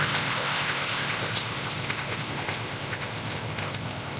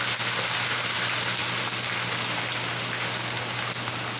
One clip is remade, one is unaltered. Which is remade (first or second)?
first